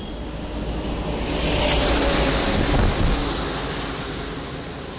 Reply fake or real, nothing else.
real